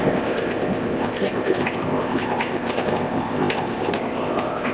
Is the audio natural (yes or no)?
no